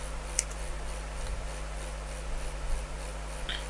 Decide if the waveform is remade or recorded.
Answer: recorded